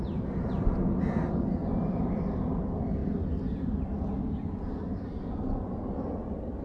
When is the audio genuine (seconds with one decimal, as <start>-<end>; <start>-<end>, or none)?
0.0-6.6